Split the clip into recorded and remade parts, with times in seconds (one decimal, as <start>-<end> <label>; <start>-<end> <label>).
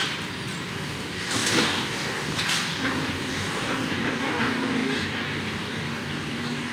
0.0-0.7 recorded; 0.7-6.7 remade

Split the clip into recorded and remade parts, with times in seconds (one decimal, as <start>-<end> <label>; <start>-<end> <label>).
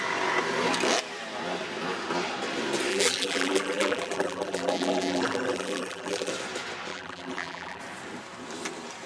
0.0-2.9 recorded; 2.9-6.3 remade; 6.3-6.9 recorded; 6.9-7.8 remade; 7.8-9.1 recorded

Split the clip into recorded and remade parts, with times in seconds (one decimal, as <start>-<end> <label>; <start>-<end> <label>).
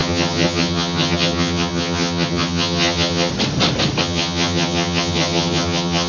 0.0-3.3 remade; 3.3-4.0 recorded; 4.0-6.1 remade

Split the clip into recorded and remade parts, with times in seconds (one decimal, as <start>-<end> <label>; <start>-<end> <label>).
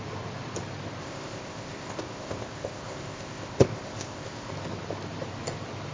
0.0-1.0 recorded; 1.0-4.5 remade; 4.5-5.9 recorded